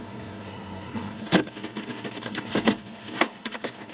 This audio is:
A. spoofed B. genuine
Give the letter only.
A